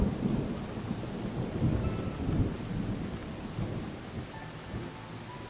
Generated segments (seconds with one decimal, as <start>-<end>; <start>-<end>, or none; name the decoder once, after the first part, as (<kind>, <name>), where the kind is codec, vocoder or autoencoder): none